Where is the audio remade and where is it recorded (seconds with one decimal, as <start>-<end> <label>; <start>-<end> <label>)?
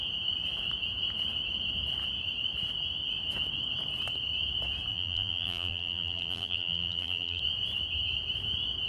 0.0-4.9 recorded; 4.9-7.4 remade; 7.4-8.9 recorded